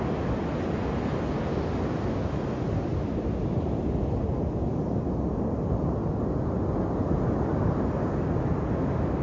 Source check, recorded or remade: recorded